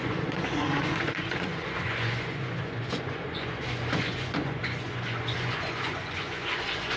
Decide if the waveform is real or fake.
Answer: fake